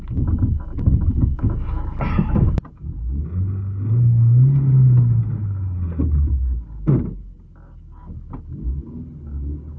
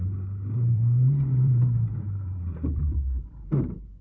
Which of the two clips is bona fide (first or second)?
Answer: first